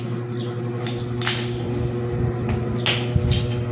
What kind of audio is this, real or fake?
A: real